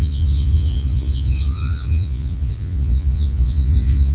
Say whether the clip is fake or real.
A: fake